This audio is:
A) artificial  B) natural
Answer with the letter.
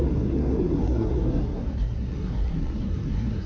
A